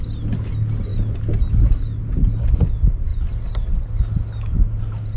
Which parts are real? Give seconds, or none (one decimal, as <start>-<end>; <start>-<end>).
0.0-5.2